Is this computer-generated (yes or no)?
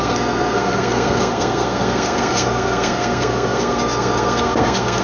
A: yes